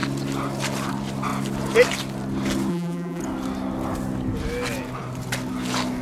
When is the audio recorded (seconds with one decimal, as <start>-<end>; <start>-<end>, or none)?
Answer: 0.0-2.7; 3.2-6.0